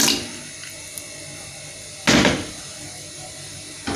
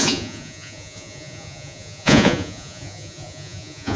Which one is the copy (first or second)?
second